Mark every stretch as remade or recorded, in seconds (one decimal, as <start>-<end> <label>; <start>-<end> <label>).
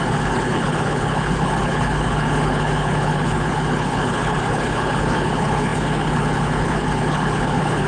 0.0-7.9 remade